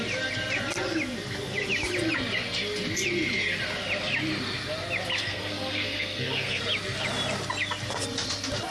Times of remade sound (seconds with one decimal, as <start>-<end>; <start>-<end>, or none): 5.2-6.6